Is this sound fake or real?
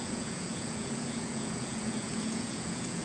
fake